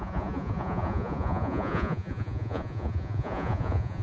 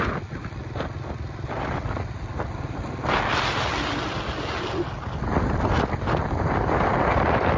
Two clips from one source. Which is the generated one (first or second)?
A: first